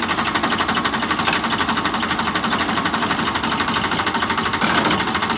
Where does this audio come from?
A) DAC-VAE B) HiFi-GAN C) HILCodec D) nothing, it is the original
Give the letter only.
D